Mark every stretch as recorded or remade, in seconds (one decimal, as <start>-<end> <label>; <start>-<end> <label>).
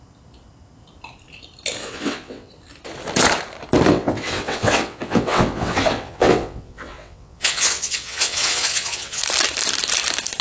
0.0-1.8 recorded; 1.8-2.5 remade; 2.5-3.9 recorded; 3.9-9.2 remade; 9.2-10.4 recorded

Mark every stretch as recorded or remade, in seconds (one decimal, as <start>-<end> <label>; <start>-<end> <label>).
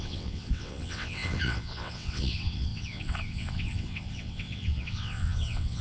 0.0-5.8 remade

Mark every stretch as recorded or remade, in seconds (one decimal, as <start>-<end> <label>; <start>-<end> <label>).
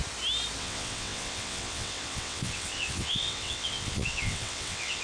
0.0-0.6 recorded; 0.6-5.0 remade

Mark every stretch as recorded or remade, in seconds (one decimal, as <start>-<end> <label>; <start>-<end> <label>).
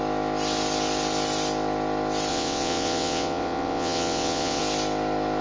0.0-2.3 recorded; 2.3-4.6 remade; 4.6-5.4 recorded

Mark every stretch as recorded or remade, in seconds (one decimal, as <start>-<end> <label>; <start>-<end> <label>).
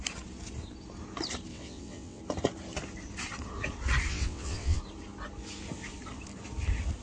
0.0-1.5 recorded; 1.5-2.2 remade; 2.2-4.1 recorded; 4.1-4.8 remade; 4.8-7.0 recorded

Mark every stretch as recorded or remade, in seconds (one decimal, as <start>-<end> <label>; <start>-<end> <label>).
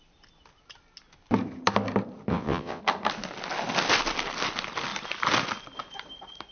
0.0-2.3 recorded; 2.3-2.8 remade; 2.8-6.5 recorded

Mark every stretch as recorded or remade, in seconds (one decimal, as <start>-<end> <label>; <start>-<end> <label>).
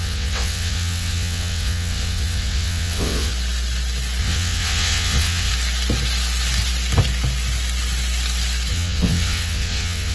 0.0-3.3 remade; 3.3-4.2 recorded; 4.2-5.5 remade; 5.5-8.7 recorded; 8.7-10.1 remade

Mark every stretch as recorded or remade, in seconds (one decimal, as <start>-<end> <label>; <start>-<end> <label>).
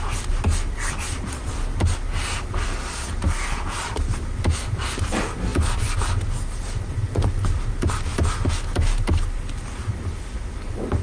0.0-11.0 recorded